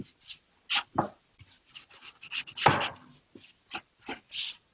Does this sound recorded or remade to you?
recorded